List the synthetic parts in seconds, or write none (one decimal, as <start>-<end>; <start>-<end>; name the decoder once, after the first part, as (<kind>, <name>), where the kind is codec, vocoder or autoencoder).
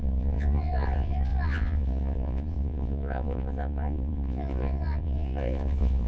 0.0-6.1 (vocoder, Vocos)